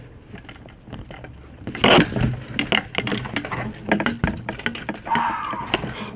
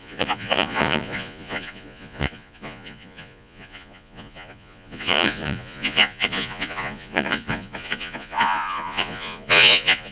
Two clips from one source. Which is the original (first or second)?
first